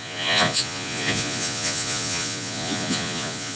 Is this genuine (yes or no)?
no